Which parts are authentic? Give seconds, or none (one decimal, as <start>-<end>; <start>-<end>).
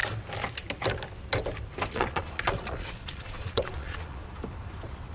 0.0-1.9; 4.2-5.1